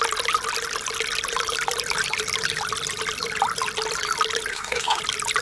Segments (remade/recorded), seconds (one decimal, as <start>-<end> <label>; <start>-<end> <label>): 0.0-4.5 recorded; 4.5-5.0 remade; 5.0-5.4 recorded